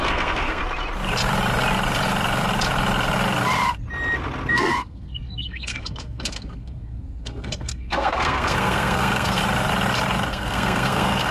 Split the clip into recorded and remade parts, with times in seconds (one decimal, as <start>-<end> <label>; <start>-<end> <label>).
0.0-0.6 remade; 0.6-4.5 recorded; 4.5-9.4 remade; 9.4-10.3 recorded; 10.3-11.3 remade